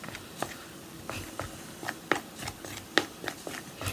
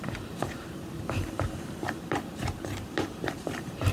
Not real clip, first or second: second